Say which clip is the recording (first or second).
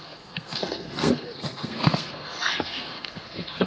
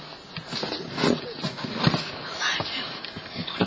second